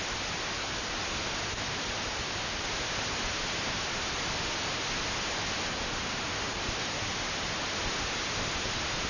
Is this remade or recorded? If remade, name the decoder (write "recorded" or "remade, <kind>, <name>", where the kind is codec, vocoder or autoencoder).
recorded